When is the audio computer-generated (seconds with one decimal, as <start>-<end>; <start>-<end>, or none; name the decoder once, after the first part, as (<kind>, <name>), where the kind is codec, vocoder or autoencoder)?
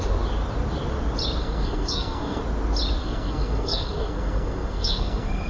1.4-2.4 (codec, SNAC); 3.0-5.5